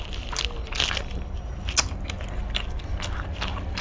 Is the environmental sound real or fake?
real